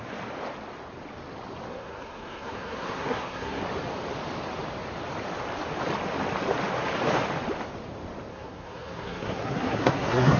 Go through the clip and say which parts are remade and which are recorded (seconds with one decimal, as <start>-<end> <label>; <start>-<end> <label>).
0.0-1.7 recorded; 1.7-3.6 remade; 3.6-8.3 recorded; 8.3-10.4 remade